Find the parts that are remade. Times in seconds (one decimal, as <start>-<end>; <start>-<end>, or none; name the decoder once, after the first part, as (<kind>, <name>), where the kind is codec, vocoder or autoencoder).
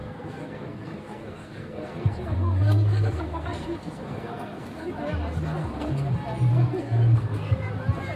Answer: 0.0-4.9 (codec, SNAC); 5.6-6.1; 6.5-7.7